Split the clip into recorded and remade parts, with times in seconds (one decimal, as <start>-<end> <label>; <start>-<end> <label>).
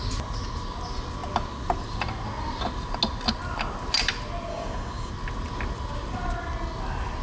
0.0-4.5 recorded; 4.5-5.1 remade; 5.1-7.2 recorded